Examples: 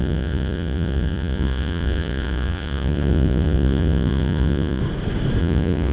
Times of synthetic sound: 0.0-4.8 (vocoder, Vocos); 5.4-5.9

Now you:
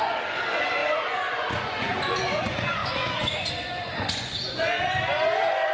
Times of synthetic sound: 0.0-5.7 (vocoder, Vocos)

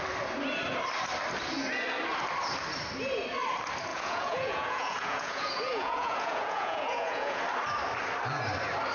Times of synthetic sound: 3.9-7.4 (vocoder, Vocos)